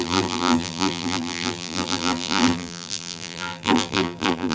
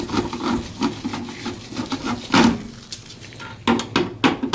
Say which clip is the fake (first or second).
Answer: first